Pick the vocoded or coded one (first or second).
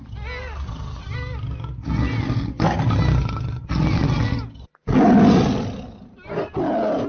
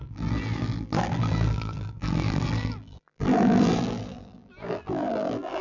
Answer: second